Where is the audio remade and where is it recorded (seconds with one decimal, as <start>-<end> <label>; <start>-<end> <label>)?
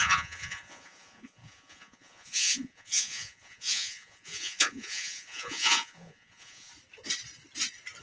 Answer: 0.0-6.7 remade; 6.7-8.0 recorded